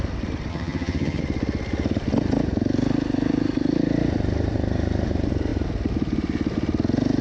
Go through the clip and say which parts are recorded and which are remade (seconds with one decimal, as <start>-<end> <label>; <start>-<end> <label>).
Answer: 0.0-0.5 recorded; 0.5-1.2 remade; 1.2-7.2 recorded